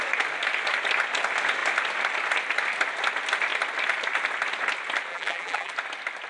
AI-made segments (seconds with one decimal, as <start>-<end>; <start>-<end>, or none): 5.1-5.7